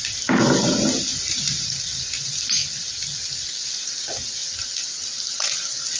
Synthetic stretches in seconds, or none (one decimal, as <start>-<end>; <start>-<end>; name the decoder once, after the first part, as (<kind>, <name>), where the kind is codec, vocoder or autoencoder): none